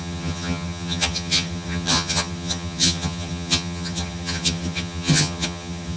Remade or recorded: remade